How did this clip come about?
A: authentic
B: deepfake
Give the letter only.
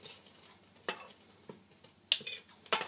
A